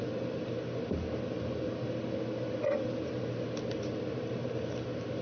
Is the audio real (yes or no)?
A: yes